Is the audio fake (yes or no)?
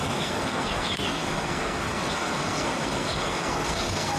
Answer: yes